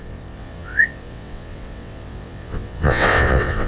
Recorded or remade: remade